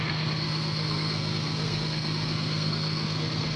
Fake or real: fake